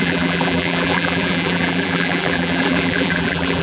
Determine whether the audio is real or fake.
fake